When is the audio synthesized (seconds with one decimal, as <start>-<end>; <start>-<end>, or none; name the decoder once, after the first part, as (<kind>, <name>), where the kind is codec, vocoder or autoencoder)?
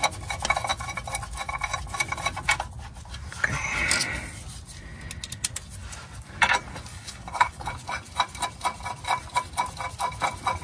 6.9-7.7 (codec, HILCodec)